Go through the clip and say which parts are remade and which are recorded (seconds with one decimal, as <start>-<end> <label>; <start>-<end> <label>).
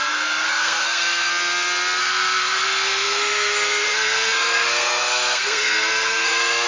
0.0-1.3 remade; 1.3-2.0 recorded; 2.0-6.7 remade